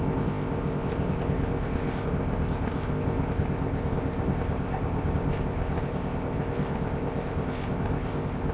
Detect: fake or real fake